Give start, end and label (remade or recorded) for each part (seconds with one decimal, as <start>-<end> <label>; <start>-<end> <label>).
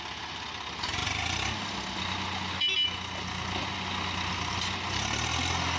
0.0-5.8 recorded